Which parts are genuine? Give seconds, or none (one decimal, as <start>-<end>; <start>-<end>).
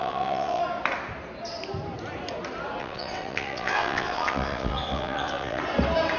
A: 0.6-2.8; 5.6-6.2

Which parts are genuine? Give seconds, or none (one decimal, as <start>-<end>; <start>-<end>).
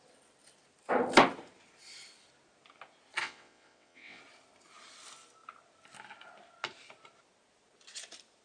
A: 0.0-3.2; 4.2-8.4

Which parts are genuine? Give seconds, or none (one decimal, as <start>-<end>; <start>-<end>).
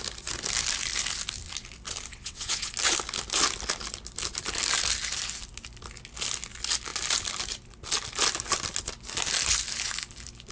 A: 0.0-2.1; 2.7-10.5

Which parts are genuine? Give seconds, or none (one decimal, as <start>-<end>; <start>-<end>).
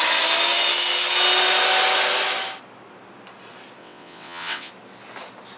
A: 0.0-3.8; 4.7-5.6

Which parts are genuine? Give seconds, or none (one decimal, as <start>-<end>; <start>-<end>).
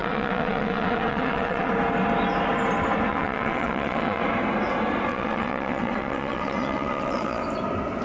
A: 1.7-3.1; 4.2-5.1; 7.4-8.0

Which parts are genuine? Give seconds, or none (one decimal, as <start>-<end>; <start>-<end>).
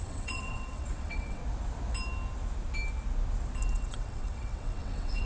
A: 1.4-3.7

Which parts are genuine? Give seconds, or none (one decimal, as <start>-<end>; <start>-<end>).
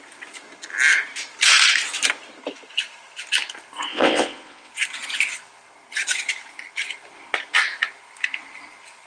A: 0.0-3.9; 4.7-9.1